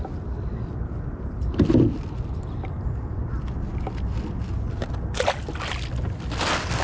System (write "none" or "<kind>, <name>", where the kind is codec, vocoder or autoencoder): none